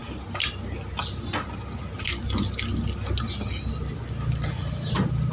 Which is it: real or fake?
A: real